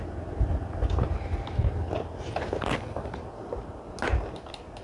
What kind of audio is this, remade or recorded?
recorded